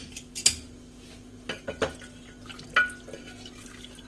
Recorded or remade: recorded